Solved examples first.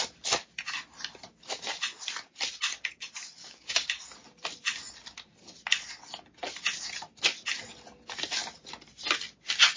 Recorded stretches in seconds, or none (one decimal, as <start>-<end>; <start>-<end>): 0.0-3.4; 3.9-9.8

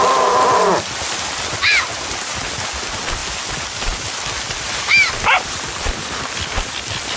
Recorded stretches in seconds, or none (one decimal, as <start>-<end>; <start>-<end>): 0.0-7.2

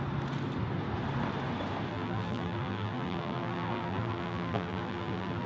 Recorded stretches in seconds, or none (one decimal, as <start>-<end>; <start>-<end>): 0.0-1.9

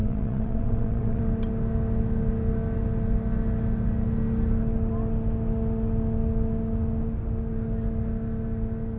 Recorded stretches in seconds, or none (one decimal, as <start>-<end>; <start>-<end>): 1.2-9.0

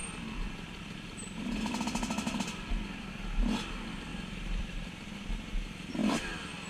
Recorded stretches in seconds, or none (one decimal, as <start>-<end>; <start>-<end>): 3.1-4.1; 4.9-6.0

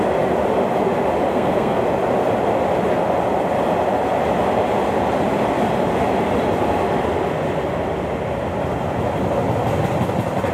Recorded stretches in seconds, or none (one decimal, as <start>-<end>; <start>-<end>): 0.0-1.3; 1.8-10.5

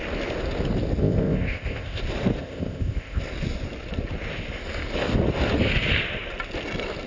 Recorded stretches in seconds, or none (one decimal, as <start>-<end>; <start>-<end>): 0.0-1.0; 2.0-2.4; 3.2-7.1

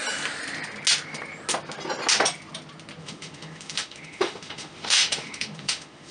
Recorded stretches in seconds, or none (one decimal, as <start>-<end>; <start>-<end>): 0.0-3.0